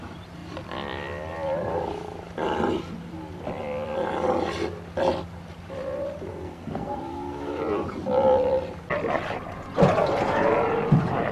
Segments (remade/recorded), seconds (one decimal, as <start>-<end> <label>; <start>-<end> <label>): 0.0-6.3 recorded; 6.3-7.6 remade; 7.6-11.3 recorded